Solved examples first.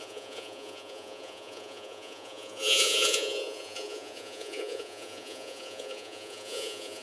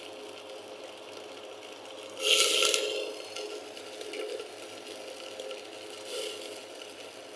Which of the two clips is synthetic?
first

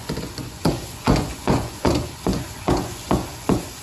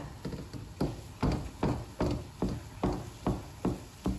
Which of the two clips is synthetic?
first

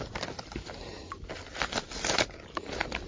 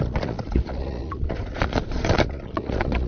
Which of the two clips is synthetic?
second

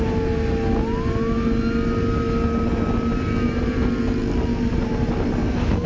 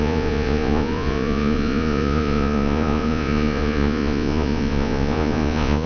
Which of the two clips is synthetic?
second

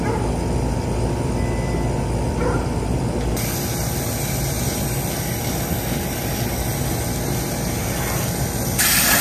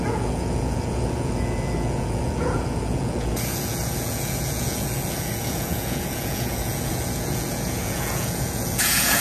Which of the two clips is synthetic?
second